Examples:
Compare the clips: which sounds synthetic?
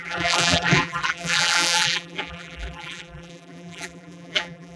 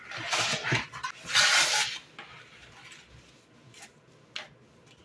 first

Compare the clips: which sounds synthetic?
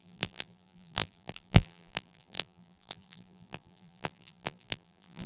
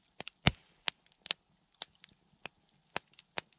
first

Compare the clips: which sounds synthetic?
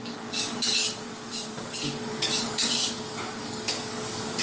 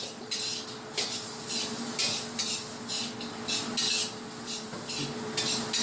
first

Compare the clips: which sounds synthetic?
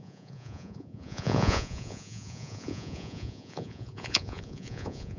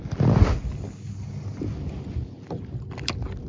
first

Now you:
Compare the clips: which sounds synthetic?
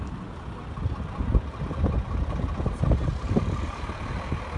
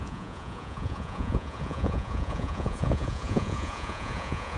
second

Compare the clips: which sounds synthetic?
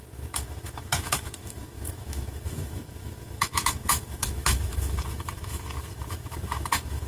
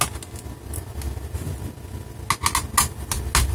first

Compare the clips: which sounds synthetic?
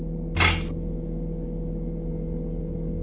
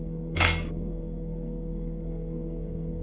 second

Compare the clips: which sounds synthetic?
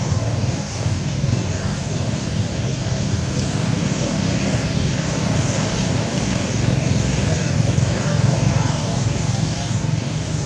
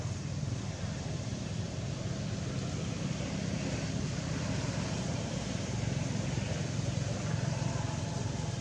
first